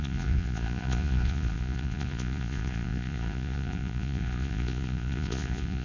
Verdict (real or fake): fake